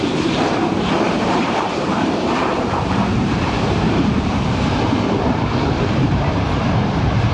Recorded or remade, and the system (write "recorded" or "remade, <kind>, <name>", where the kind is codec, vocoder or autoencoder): remade, vocoder, BigVGAN v2